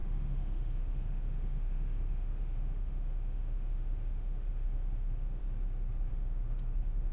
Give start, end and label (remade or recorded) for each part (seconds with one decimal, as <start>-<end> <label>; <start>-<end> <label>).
0.0-5.4 remade; 5.4-6.1 recorded; 6.1-7.1 remade